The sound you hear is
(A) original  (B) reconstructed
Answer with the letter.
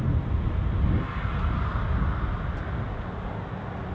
A